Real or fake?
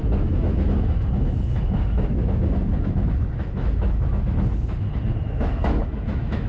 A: fake